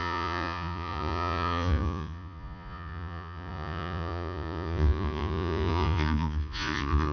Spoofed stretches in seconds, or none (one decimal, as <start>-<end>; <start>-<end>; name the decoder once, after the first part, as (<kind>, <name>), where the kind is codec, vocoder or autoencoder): 0.0-7.1 (vocoder, Vocos)